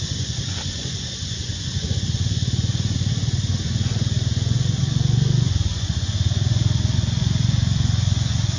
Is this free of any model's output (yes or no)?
no